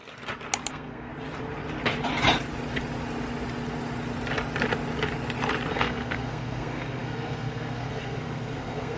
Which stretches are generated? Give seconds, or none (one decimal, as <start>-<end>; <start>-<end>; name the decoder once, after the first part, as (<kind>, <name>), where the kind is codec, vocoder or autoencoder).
0.7-1.1 (codec, SNAC); 5.7-9.0

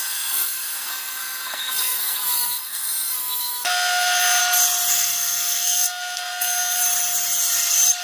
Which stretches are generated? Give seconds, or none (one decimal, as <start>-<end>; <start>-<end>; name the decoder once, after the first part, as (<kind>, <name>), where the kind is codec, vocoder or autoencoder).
0.0-4.4 (codec, SNAC); 4.9-6.8

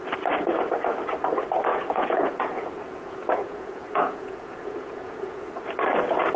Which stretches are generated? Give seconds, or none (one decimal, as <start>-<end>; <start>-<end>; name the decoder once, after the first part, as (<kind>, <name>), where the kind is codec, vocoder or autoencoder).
1.7-5.5 (vocoder, Vocos)

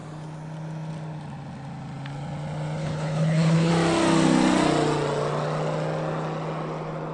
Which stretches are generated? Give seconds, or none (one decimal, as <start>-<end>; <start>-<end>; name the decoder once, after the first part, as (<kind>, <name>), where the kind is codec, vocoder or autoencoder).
2.8-3.7 (codec, HILCodec)